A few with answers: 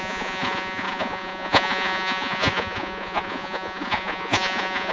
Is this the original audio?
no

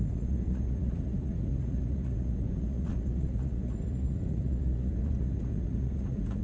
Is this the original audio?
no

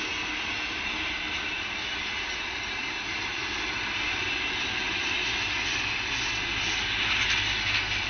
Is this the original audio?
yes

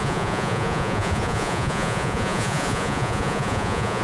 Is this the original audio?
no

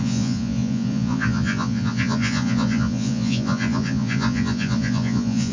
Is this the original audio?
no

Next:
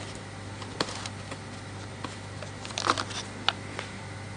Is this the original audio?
yes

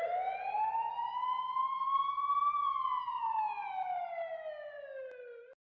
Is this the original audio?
yes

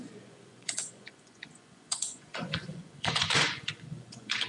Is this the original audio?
no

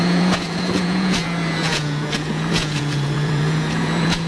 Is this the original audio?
no